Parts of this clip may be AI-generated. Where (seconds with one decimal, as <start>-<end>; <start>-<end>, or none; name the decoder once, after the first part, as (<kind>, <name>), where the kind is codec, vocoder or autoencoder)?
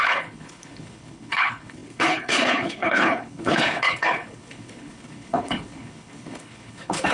0.0-7.1 (codec, HILCodec)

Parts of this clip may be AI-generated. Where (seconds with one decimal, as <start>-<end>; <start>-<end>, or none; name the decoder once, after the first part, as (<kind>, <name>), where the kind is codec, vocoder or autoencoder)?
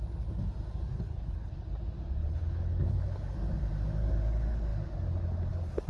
0.9-1.5 (codec, HILCodec); 2.2-3.2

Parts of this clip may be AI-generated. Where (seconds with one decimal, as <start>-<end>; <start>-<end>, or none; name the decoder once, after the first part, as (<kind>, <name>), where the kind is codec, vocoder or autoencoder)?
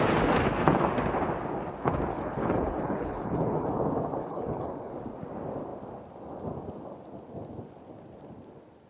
2.1-3.7 (codec, HILCodec); 4.2-4.9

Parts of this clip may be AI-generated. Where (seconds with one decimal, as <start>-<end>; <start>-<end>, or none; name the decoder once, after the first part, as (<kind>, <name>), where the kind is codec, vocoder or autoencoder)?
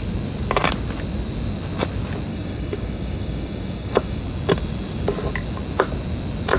2.3-4.2 (codec, DAC)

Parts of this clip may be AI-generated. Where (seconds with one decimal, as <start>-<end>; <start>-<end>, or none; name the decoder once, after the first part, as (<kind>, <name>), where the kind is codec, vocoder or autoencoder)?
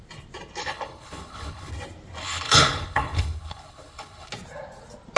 0.6-1.7 (codec, HILCodec); 2.2-4.3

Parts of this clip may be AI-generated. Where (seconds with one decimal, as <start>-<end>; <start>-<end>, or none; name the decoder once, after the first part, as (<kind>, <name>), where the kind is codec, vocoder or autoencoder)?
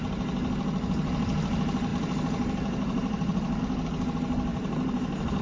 1.9-3.6 (vocoder, BigVGAN v2); 4.5-5.4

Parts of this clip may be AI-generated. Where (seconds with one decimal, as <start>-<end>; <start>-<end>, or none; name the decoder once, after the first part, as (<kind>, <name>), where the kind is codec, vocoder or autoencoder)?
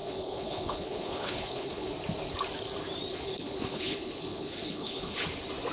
0.0-1.9 (codec, HILCodec); 3.1-5.2